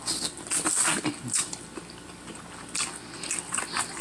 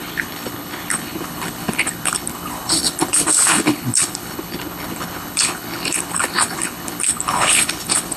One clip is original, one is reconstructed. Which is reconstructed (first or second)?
second